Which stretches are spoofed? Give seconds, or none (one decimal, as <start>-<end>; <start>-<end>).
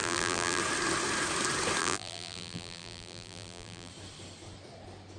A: 0.0-0.6; 1.8-3.9